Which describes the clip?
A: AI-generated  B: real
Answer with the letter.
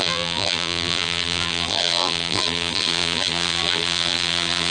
A